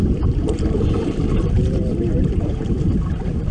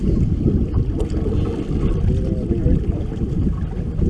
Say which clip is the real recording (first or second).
second